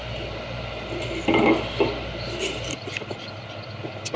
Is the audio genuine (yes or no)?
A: yes